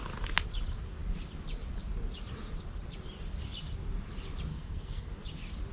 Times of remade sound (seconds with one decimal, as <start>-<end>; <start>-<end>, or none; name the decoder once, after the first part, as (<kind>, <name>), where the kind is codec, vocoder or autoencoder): 4.5-5.1 (codec, SNAC)